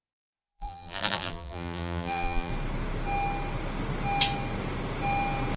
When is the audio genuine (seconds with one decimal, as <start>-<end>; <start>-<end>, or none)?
2.5-5.6